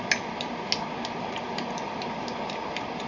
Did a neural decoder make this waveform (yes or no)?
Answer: no